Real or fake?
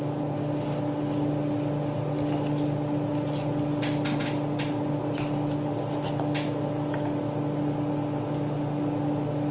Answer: real